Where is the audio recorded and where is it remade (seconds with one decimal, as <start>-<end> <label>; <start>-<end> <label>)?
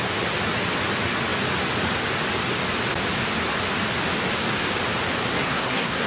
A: 0.0-5.3 recorded; 5.3-6.1 remade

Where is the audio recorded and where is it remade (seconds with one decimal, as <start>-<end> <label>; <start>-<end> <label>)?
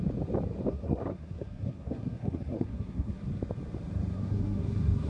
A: 0.0-0.7 recorded; 0.7-3.2 remade; 3.2-4.1 recorded; 4.1-5.1 remade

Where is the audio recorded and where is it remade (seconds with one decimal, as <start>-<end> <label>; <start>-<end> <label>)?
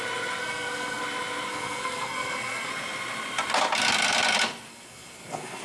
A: 0.0-0.4 recorded; 0.4-1.0 remade; 1.0-1.5 recorded; 1.5-2.7 remade; 2.7-4.7 recorded; 4.7-5.6 remade